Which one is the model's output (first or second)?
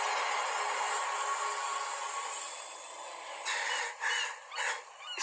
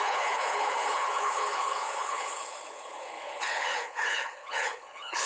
second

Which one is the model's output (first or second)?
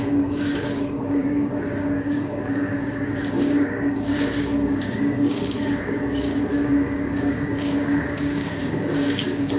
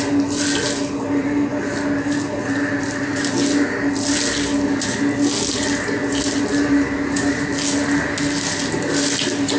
first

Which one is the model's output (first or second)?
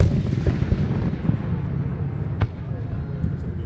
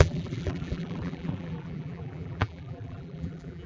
second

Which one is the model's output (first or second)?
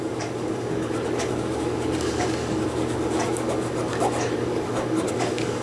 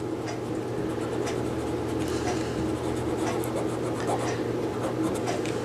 first